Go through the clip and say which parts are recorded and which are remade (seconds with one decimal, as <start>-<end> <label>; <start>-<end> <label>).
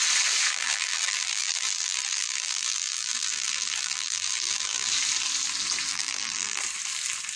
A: 0.0-0.5 recorded; 0.5-4.9 remade; 4.9-5.9 recorded; 5.9-6.6 remade; 6.6-7.4 recorded